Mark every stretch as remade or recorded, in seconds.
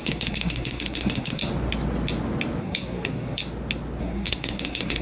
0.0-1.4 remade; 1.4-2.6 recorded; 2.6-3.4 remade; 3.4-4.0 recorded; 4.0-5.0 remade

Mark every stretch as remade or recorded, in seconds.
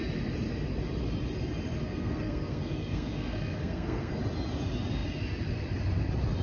0.0-1.8 recorded; 1.8-4.2 remade; 4.2-6.4 recorded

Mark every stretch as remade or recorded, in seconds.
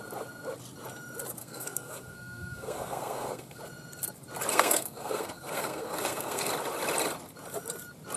0.0-1.4 recorded; 1.4-3.6 remade; 3.6-4.5 recorded; 4.5-6.5 remade; 6.5-8.2 recorded